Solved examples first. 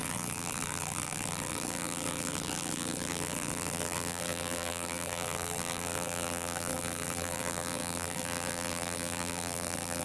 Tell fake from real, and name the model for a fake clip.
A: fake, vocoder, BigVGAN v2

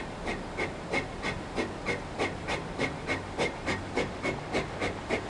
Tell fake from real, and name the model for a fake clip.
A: real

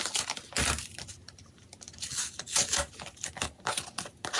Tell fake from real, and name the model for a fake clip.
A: real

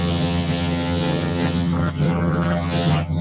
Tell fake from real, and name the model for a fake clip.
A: fake, vocoder, HiFi-GAN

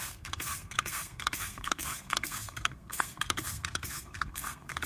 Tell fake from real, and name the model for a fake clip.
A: fake, codec, SNAC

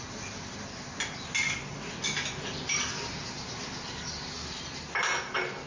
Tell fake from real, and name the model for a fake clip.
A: real